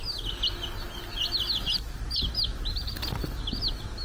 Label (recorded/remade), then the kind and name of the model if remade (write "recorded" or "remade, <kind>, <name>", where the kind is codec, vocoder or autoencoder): recorded